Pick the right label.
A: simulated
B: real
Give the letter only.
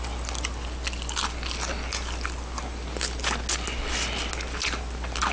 B